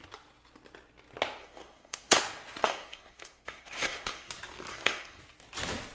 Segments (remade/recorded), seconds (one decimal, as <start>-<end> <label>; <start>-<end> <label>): 0.0-1.4 recorded; 1.4-2.2 remade; 2.2-2.6 recorded; 2.6-4.3 remade; 4.3-4.7 recorded; 4.7-5.2 remade; 5.2-5.9 recorded